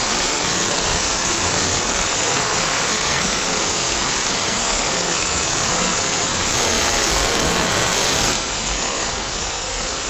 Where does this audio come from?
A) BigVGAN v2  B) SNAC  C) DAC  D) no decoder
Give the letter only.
B